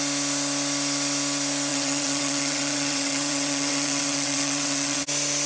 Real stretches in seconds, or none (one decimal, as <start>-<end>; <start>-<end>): 0.0-1.7; 5.0-5.5